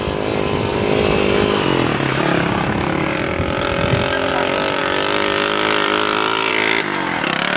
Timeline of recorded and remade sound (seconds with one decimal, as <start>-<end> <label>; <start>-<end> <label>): 0.0-7.6 recorded